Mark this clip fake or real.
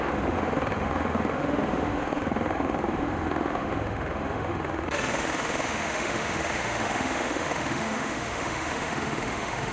fake